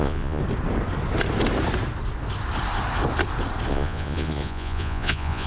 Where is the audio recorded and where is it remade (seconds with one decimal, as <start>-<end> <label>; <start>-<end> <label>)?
0.0-0.4 remade; 0.4-3.7 recorded; 3.7-5.5 remade